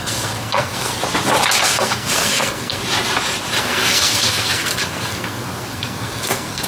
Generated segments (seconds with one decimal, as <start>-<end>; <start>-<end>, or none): 0.0-1.0; 1.6-2.8; 3.6-6.7